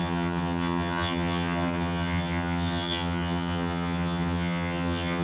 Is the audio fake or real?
fake